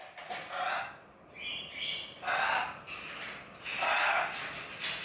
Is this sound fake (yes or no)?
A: no